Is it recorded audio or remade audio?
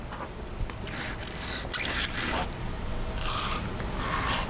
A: recorded